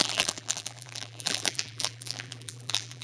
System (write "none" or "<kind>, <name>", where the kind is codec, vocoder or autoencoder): vocoder, BigVGAN v2